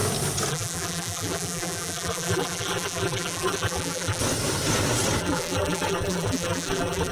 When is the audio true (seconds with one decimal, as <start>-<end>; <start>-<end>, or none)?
0.0-0.5; 4.2-5.2